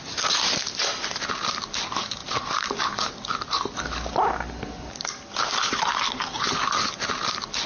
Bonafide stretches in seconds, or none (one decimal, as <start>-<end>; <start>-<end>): 0.0-7.7